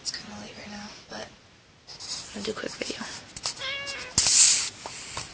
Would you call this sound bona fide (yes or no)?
yes